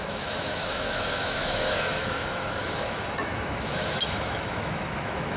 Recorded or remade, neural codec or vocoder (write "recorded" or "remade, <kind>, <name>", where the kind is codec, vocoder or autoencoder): remade, autoencoder, DAC-VAE